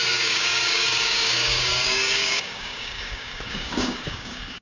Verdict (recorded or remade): remade